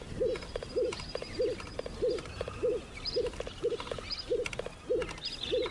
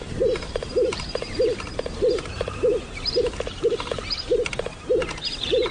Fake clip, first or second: second